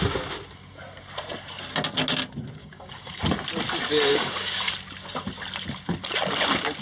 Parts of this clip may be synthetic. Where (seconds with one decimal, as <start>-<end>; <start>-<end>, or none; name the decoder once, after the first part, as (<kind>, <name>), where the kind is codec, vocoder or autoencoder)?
2.6-3.2 (codec, DAC); 4.1-4.7